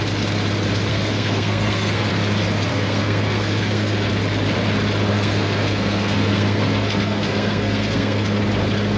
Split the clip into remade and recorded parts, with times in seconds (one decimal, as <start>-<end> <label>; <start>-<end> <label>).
0.0-0.9 recorded; 0.9-2.1 remade; 2.1-2.7 recorded; 2.7-4.1 remade; 4.1-5.1 recorded; 5.1-8.4 remade; 8.4-9.0 recorded